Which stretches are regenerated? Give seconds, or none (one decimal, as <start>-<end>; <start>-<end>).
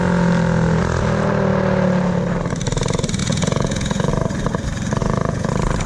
3.2-4.1; 5.0-5.5